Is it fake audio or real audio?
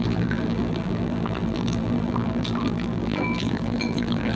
fake